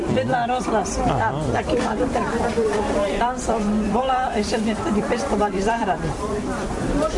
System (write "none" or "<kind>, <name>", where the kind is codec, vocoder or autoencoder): vocoder, BigVGAN v2